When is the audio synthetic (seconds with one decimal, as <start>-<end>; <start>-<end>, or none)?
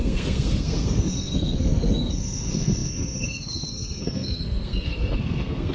0.0-5.7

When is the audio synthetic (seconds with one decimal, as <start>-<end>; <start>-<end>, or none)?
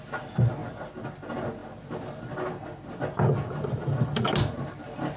none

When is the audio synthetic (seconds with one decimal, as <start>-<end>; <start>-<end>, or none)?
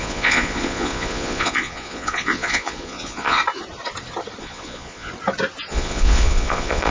0.0-3.4; 4.4-5.1; 5.7-6.9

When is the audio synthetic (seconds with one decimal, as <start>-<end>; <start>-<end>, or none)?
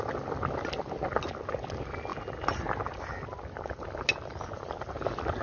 none